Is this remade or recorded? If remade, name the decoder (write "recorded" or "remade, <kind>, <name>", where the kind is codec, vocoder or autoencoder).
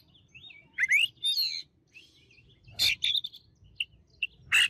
recorded